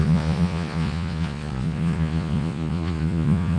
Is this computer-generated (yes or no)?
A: yes